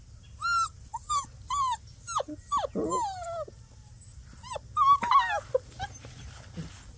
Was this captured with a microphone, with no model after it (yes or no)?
yes